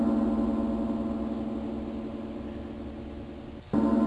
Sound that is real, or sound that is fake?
real